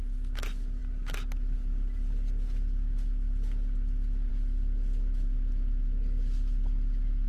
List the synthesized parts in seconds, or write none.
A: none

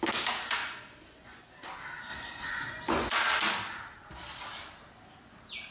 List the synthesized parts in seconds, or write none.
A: 0.6-1.7 (vocoder, Vocos); 2.1-3.1

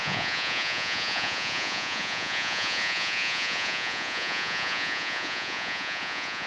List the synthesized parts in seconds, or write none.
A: 0.0-6.5 (vocoder, Vocos)

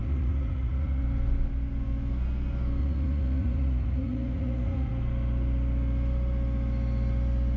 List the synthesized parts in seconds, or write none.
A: 0.0-1.0 (vocoder, Vocos); 2.8-4.9

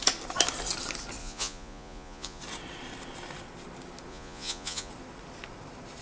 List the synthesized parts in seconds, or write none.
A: 1.2-2.4 (vocoder, Vocos); 4.1-4.9

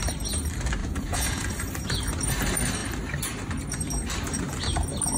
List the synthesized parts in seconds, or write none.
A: 0.8-1.5 (vocoder, Vocos)